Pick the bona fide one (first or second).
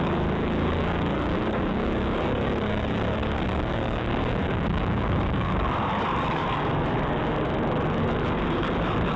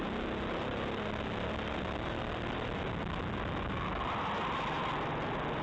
second